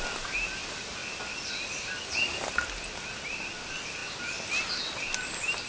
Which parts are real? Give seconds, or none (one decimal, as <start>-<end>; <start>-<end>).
0.0-5.7